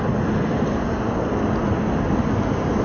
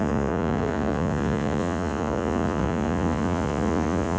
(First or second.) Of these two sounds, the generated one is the second